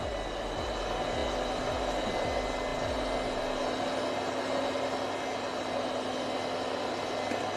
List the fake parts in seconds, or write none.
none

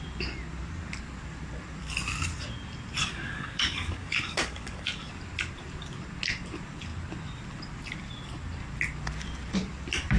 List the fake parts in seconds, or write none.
3.0-5.1 (codec, DAC)

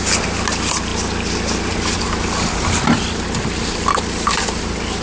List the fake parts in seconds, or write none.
none

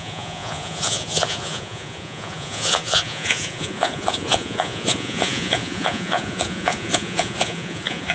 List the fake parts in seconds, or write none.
0.0-8.1 (vocoder, Vocos)

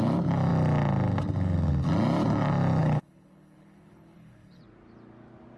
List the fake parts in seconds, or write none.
2.8-4.6 (codec, HILCodec)